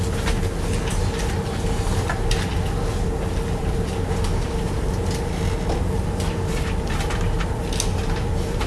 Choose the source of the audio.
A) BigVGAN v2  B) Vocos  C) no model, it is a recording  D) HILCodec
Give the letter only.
C